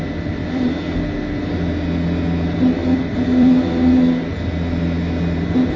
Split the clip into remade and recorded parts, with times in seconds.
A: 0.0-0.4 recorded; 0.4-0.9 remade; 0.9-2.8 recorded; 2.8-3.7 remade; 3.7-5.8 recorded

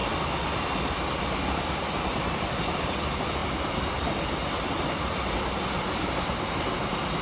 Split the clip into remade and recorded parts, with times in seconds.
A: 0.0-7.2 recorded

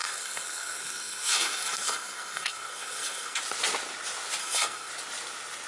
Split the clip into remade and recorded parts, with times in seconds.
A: 0.0-3.4 remade; 3.4-4.4 recorded; 4.4-4.9 remade; 4.9-5.7 recorded

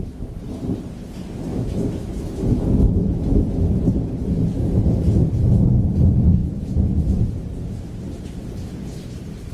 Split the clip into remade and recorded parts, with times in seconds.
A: 0.0-1.5 recorded; 1.5-3.8 remade; 3.8-6.4 recorded; 6.4-7.2 remade; 7.2-9.5 recorded

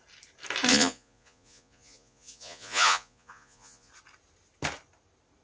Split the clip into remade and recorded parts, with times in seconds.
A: 0.0-0.7 recorded; 0.7-3.9 remade; 3.9-5.4 recorded

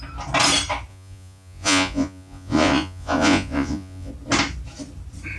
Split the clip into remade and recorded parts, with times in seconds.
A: 0.0-0.9 recorded; 0.9-4.1 remade; 4.1-5.4 recorded

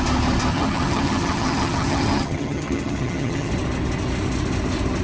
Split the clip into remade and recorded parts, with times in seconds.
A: 0.0-0.5 recorded; 0.5-3.5 remade; 3.5-5.0 recorded